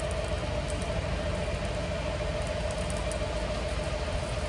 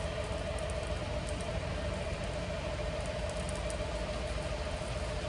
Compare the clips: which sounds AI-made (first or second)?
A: second